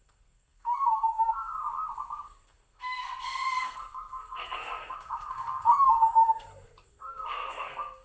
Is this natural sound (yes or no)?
no